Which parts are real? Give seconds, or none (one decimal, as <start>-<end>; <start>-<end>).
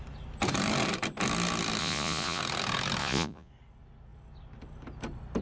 0.0-1.8; 2.4-3.0; 3.5-5.4